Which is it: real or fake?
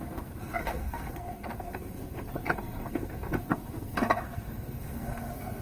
fake